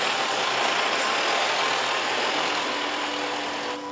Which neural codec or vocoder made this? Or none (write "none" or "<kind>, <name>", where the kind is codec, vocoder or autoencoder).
none